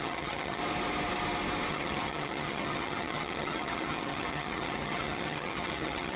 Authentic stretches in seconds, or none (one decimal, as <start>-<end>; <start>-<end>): 0.6-1.7